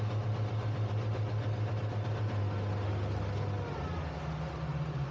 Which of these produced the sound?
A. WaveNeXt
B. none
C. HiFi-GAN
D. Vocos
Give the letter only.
B